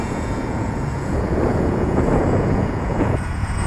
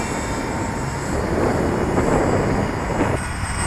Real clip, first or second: second